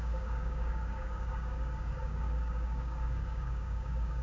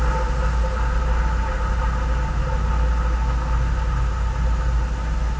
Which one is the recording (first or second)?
second